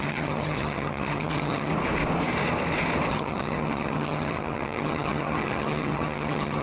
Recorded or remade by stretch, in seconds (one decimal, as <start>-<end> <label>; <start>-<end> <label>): 0.0-1.7 remade; 1.7-3.1 recorded; 3.1-6.6 remade